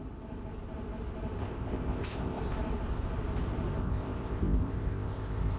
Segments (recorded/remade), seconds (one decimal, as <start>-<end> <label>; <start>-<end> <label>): 0.0-1.4 recorded; 1.4-2.4 remade; 2.4-3.8 recorded; 3.8-5.6 remade

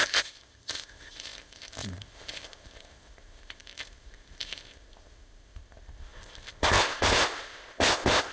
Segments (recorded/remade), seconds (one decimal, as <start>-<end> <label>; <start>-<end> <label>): 0.0-8.3 remade

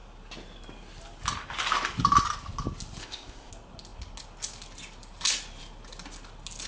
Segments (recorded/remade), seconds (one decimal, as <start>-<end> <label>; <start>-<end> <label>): 0.0-3.0 recorded; 3.0-3.5 remade; 3.5-6.7 recorded